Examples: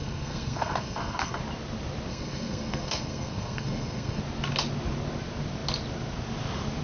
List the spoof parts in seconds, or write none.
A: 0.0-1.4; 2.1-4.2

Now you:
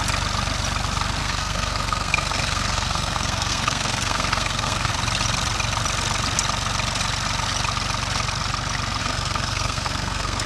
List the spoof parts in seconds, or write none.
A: 1.2-4.9; 9.0-10.5